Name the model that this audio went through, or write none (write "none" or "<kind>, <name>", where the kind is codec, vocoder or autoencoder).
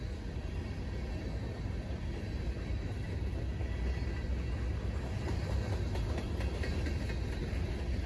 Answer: none